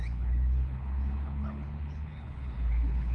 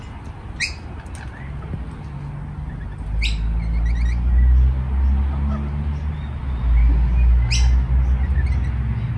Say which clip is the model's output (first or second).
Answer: first